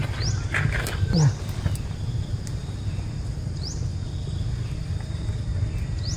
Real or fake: real